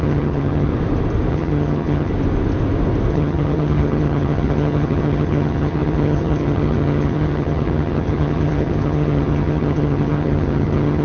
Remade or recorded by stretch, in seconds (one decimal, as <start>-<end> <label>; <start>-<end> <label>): 0.0-0.7 remade; 0.7-1.3 recorded; 1.3-2.1 remade; 2.1-3.1 recorded; 3.1-11.0 remade